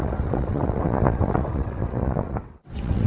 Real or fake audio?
fake